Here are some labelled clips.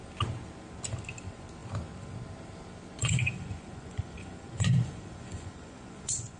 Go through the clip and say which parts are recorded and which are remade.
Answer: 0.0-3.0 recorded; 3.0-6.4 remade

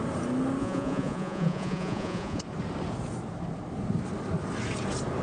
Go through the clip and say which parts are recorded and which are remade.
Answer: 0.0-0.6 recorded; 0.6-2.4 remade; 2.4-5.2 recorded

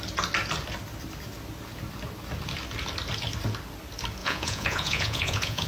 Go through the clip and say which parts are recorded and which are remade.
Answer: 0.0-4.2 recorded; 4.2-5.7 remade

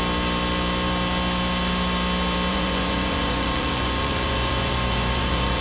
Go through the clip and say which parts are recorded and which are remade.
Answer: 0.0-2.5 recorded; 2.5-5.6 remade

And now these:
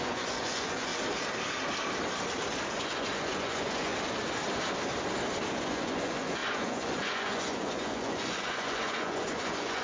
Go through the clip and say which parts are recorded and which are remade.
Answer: 0.0-0.9 remade; 0.9-2.7 recorded; 2.7-3.9 remade; 3.9-5.5 recorded; 5.5-9.8 remade

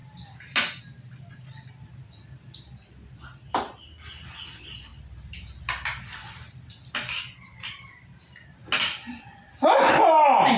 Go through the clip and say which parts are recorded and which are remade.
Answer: 0.0-10.6 recorded

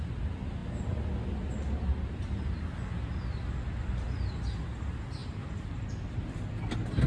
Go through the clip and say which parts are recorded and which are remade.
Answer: 0.0-7.1 recorded